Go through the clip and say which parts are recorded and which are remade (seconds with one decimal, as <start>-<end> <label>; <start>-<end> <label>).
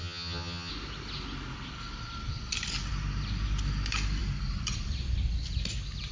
0.0-0.7 remade; 0.7-6.1 recorded